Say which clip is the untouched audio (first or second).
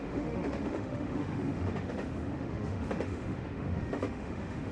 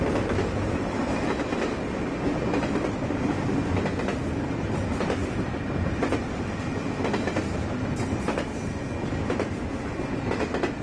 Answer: second